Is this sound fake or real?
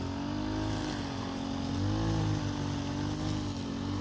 real